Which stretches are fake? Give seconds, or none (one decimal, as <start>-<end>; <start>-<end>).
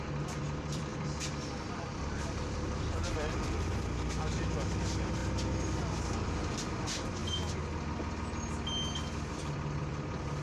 0.0-7.2; 9.3-10.4